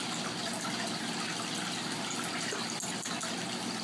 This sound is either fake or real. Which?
real